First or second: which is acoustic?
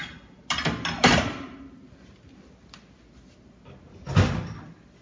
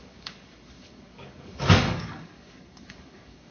first